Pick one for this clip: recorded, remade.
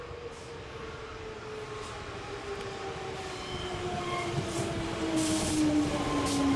recorded